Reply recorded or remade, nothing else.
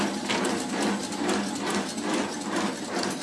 recorded